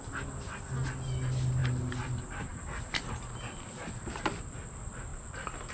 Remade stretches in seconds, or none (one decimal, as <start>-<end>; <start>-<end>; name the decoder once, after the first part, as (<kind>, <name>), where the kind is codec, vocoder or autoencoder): 1.6-2.1 (vocoder, BigVGAN v2); 5.1-5.7